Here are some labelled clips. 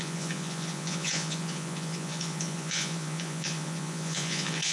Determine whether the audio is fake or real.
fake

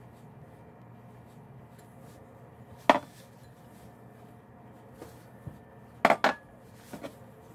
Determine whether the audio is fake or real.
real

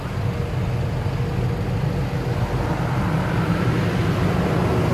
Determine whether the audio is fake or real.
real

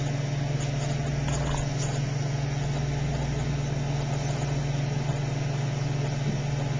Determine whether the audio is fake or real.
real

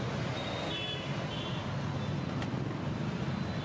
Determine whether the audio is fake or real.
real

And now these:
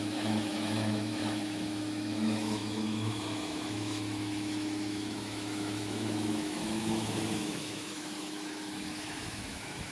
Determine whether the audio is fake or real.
fake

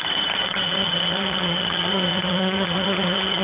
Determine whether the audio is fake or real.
fake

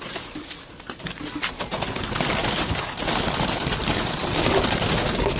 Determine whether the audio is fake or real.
real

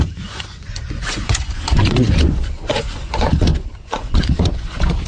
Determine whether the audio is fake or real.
fake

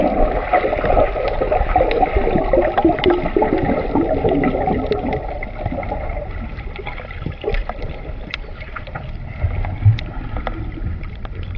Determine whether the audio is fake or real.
real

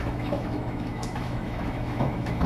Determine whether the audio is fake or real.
fake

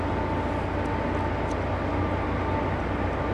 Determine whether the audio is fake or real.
real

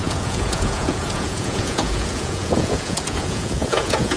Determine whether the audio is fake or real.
fake